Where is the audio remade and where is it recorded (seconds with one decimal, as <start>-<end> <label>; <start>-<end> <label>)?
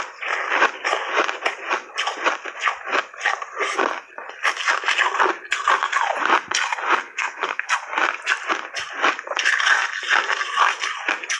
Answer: 0.0-7.0 recorded; 7.0-7.7 remade; 7.7-11.4 recorded